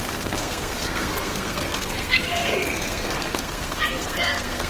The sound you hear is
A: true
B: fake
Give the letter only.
B